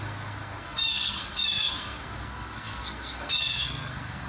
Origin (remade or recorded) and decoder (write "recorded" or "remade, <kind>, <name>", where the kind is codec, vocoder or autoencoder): remade, codec, SNAC